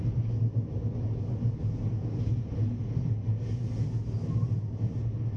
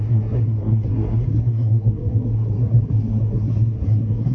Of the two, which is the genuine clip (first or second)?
first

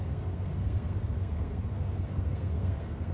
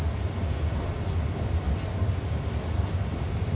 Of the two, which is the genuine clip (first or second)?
second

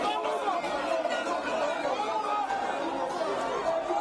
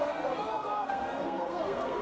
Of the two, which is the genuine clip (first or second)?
first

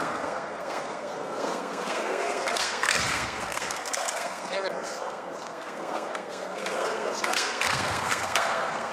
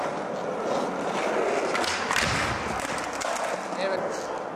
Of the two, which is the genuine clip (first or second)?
second